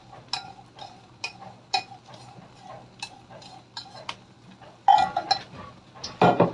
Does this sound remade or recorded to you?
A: recorded